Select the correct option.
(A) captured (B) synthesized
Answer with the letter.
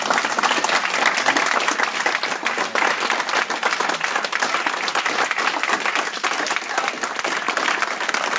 A